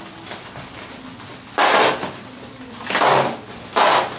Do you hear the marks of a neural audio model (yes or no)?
no